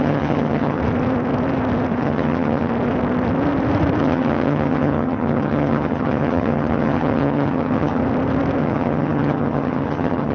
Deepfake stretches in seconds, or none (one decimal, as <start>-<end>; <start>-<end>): 0.0-0.8; 2.0-2.7; 4.0-8.0; 8.6-10.3